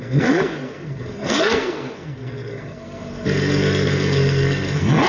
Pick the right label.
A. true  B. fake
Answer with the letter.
B